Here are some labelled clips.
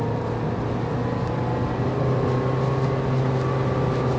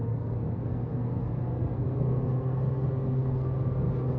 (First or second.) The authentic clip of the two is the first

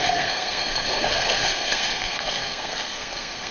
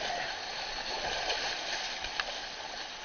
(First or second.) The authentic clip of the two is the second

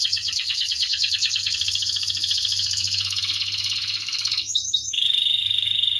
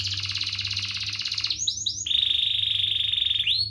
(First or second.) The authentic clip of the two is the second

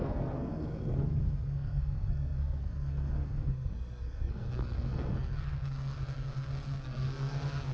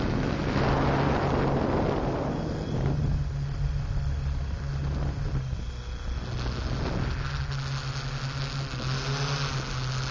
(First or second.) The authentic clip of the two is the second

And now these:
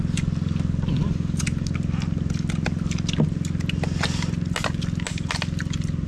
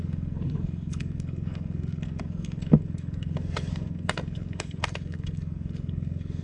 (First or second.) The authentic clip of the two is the first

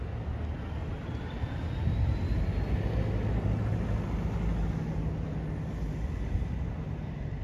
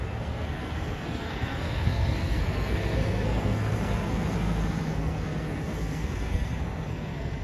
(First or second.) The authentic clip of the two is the first